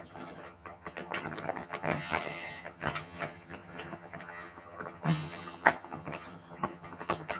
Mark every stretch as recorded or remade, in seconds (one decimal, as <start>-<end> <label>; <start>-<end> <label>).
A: 0.0-7.4 remade